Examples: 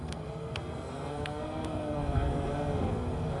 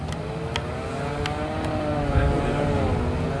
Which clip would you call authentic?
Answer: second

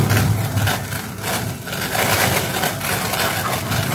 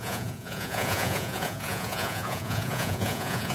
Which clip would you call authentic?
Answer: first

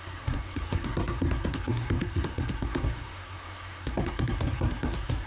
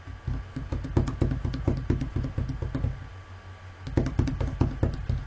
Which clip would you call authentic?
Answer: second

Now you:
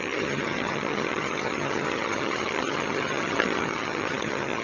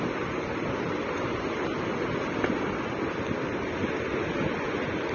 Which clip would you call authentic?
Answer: second